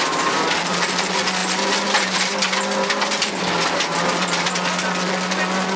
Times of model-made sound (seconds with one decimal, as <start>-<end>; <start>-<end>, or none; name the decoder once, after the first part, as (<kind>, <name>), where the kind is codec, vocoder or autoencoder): none